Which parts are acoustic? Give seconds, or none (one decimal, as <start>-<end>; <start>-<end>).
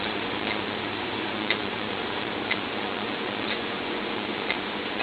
none